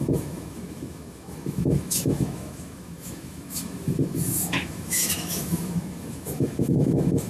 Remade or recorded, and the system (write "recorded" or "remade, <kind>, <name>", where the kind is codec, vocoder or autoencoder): remade, autoencoder, DAC-VAE